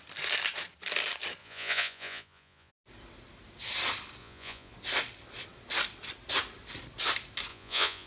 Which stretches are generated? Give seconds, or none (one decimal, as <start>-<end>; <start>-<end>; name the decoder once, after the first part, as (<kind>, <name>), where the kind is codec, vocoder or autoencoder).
1.4-2.7 (vocoder, Vocos); 4.2-4.7; 7.5-8.1